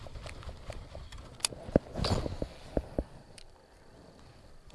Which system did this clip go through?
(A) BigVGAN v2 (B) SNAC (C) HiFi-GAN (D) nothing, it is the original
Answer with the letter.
D